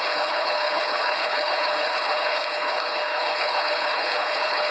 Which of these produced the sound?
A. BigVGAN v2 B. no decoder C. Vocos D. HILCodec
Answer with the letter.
D